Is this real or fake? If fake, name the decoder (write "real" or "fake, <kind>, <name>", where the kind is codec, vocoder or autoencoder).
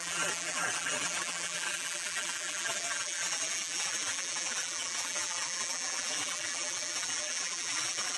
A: fake, vocoder, BigVGAN v2